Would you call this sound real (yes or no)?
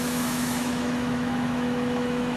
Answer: no